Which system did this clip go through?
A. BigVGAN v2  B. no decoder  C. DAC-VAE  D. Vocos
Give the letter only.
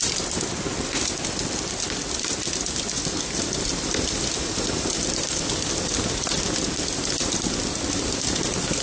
B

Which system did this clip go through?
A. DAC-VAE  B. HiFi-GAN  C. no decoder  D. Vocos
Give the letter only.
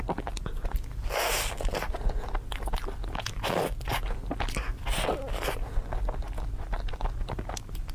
C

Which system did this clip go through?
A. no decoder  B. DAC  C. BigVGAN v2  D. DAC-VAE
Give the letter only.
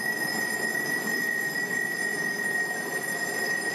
A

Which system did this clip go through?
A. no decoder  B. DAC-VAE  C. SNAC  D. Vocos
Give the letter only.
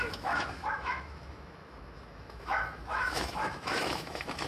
B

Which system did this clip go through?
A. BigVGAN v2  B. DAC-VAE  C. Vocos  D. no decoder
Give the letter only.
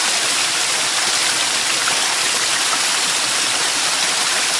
D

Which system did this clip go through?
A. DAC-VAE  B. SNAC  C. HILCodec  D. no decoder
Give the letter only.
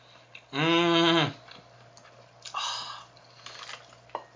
D